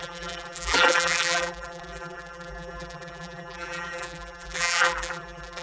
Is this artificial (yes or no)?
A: yes